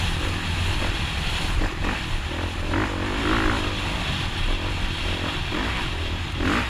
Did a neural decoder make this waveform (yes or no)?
no